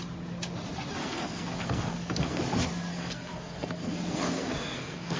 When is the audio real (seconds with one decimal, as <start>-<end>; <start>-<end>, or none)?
0.0-1.0; 2.4-2.9